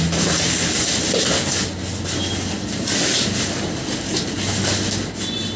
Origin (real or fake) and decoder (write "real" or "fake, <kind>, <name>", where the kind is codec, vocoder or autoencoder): real